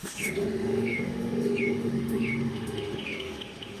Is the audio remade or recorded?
remade